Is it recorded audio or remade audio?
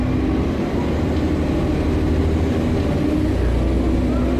recorded